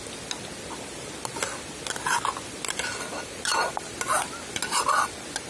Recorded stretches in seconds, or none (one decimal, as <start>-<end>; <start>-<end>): 0.0-5.5